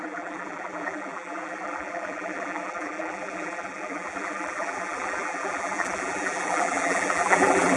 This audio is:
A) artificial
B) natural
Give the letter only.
A